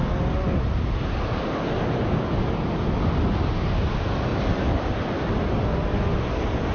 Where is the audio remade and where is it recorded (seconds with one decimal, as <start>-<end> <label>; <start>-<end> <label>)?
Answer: 0.0-4.3 recorded; 4.3-5.1 remade; 5.1-6.7 recorded